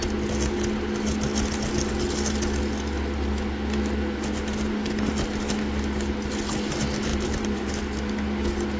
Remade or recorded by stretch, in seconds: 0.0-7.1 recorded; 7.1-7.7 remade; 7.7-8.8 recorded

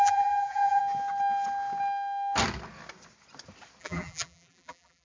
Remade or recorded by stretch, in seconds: 0.0-0.8 remade; 0.8-3.8 recorded; 3.8-5.0 remade

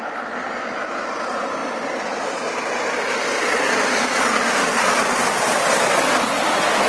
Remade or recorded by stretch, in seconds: 0.0-6.9 recorded

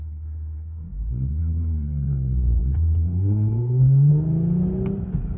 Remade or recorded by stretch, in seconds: 0.0-4.1 remade; 4.1-5.4 recorded

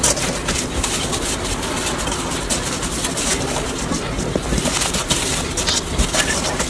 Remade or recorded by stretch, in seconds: 0.0-6.7 recorded

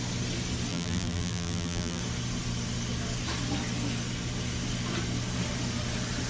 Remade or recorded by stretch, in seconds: 0.0-0.7 recorded; 0.7-2.0 remade; 2.0-6.3 recorded